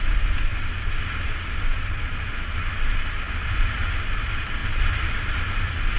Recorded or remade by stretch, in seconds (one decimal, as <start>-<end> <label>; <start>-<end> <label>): 0.0-6.0 recorded